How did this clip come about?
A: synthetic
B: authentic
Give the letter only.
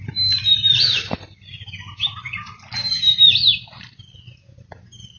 B